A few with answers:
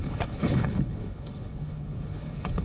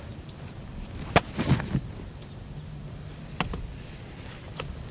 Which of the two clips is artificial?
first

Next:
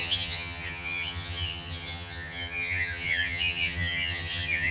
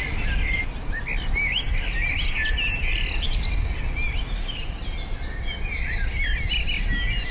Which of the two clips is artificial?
first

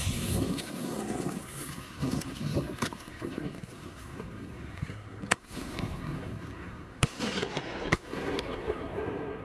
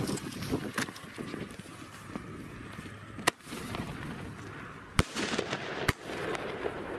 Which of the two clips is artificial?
first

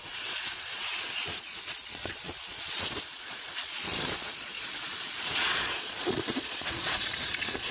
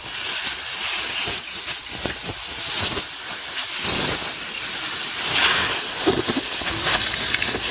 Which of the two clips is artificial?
first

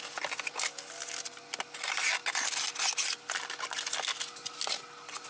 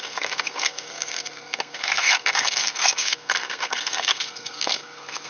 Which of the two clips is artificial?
second